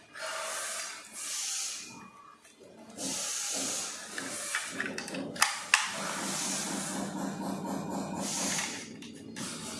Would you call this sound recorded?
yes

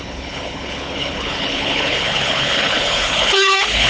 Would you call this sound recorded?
no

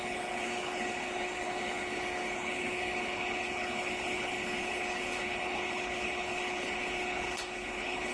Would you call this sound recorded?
no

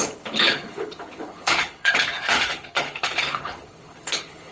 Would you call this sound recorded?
no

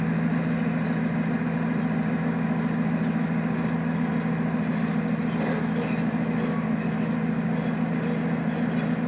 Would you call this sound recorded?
yes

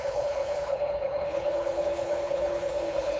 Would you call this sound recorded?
no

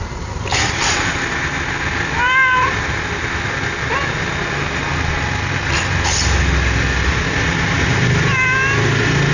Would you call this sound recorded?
yes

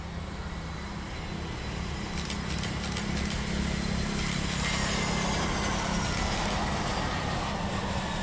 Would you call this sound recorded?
yes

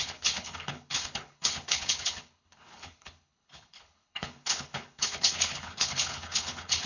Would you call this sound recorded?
no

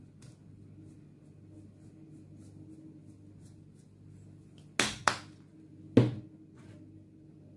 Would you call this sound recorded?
yes